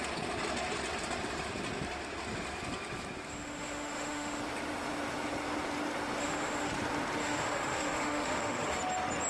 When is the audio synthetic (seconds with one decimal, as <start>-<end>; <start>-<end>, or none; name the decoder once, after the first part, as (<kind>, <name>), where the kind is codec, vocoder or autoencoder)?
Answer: 3.3-4.4 (autoencoder, DAC-VAE); 6.2-6.7; 7.2-8.8

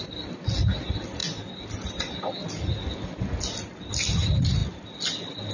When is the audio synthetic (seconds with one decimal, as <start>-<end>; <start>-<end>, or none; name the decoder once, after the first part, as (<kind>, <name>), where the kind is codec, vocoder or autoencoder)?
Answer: none

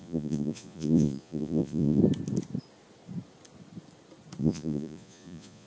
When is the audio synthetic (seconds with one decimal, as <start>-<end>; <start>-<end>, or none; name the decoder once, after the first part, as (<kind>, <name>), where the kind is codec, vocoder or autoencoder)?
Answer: 0.0-2.0 (vocoder, Vocos); 4.4-5.7

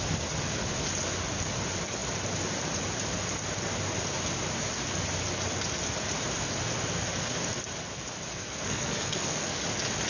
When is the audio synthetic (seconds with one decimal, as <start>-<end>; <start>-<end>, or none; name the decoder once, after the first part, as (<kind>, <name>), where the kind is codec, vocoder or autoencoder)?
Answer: 8.3-9.6 (codec, SNAC)

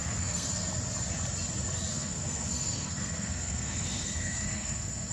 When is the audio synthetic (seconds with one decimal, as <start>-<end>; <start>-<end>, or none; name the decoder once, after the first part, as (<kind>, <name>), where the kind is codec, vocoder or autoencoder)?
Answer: 0.0-0.5 (codec, SNAC); 1.9-5.1

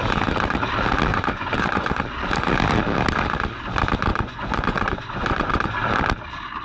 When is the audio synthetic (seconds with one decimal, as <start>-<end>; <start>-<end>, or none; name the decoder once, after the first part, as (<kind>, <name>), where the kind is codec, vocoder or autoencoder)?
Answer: 1.1-2.0 (vocoder, Vocos); 4.1-5.7

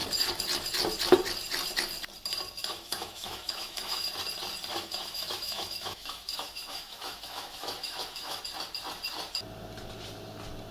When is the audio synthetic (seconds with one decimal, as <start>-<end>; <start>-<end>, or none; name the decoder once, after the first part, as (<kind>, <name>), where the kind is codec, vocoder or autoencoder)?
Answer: 2.6-4.1 (autoencoder, DAC-VAE); 4.7-8.4

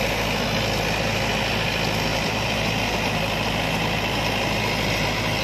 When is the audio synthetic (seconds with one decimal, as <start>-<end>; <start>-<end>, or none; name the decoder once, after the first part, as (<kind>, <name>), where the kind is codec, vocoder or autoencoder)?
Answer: 2.1-2.6 (vocoder, BigVGAN v2)